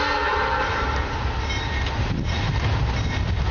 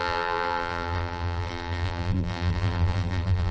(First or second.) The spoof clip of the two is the second